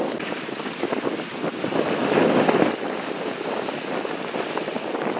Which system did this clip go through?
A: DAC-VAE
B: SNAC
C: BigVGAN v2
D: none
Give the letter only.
D